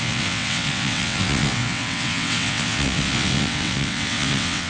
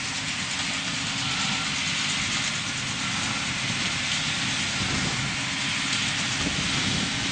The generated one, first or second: first